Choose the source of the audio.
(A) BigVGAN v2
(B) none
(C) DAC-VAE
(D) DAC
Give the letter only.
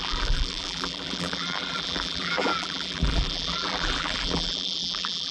A